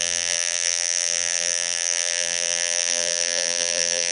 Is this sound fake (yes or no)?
yes